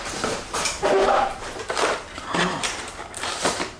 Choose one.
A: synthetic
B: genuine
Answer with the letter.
A